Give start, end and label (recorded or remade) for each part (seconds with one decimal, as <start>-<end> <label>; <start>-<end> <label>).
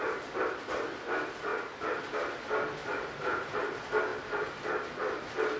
0.0-2.8 recorded; 2.8-3.5 remade; 3.5-4.1 recorded; 4.1-4.6 remade; 4.6-5.6 recorded